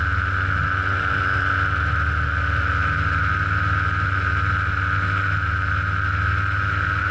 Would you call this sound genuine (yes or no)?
yes